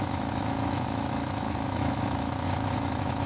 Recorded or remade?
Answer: remade